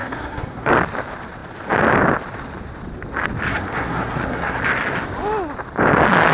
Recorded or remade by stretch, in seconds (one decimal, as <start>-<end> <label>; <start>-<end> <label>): 0.0-0.7 remade; 0.7-3.5 recorded; 3.5-4.6 remade; 4.6-6.3 recorded